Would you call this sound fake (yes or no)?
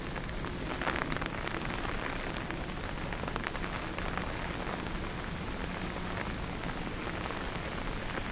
no